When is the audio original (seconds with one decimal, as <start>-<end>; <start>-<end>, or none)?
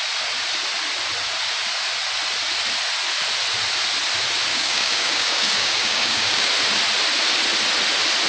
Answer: 0.0-4.5; 6.5-8.3